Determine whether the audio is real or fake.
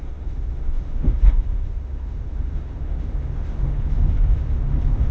fake